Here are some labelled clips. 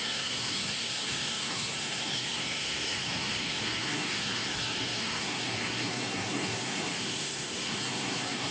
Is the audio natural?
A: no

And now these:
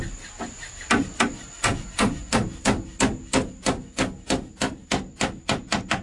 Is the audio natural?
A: yes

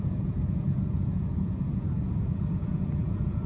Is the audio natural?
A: no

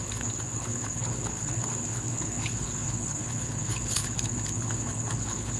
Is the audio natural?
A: no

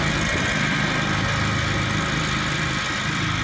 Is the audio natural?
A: yes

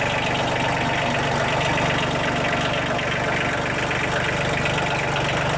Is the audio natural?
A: yes